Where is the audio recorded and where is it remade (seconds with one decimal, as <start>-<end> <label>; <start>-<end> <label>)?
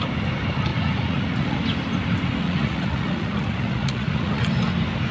0.0-0.7 recorded; 0.7-1.6 remade; 1.6-2.4 recorded; 2.4-4.5 remade; 4.5-5.1 recorded